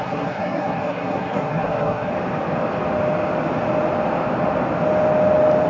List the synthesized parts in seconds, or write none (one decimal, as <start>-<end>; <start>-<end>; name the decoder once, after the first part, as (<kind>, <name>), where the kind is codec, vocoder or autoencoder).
0.0-2.1 (codec, SNAC)